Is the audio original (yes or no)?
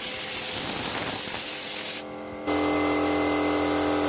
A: yes